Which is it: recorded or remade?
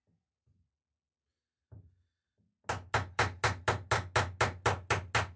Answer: recorded